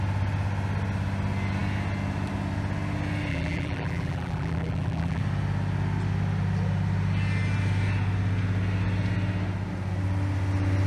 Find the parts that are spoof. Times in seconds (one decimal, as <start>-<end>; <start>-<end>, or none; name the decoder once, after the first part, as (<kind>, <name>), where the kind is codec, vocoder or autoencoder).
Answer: 3.3-5.2 (vocoder, BigVGAN v2)